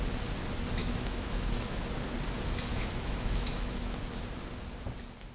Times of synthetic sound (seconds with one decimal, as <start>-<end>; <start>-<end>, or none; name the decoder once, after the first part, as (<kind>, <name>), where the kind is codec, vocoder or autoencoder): 0.8-1.8 (autoencoder, DAC-VAE); 2.7-4.0